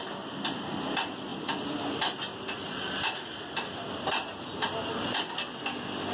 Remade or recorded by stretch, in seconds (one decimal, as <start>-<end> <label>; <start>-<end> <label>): 0.0-6.1 recorded